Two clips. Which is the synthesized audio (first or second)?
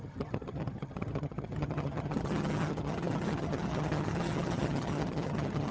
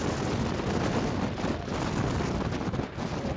first